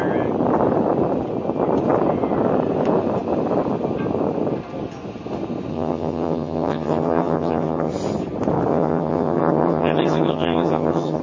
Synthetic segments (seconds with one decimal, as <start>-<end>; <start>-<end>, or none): 5.7-7.9; 8.7-11.2